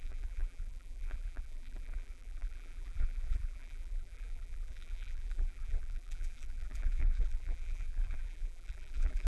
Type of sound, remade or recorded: remade